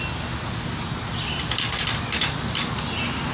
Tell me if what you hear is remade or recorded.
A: recorded